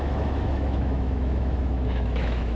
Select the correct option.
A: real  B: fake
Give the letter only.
B